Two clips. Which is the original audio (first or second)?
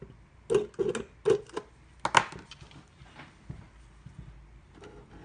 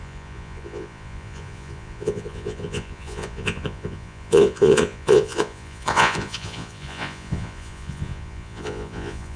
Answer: first